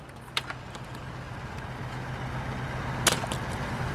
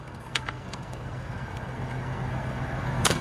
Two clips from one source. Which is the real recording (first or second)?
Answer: first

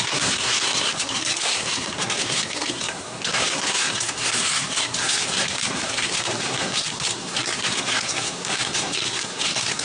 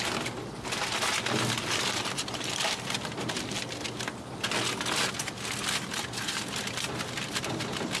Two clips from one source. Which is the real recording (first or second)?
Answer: second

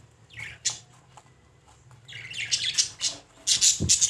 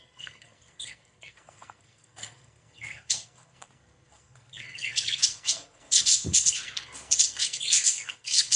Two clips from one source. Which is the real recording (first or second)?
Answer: first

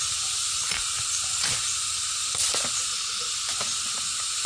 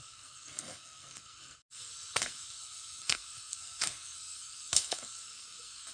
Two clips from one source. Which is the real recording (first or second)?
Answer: first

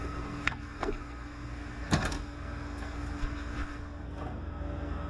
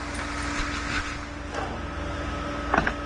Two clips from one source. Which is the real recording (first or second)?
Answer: second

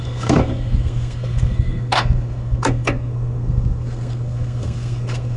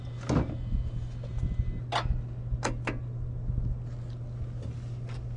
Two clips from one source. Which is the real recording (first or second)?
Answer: second